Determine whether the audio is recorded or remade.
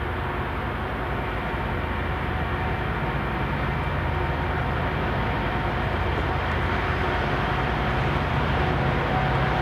recorded